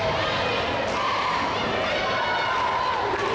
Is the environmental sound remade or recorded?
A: recorded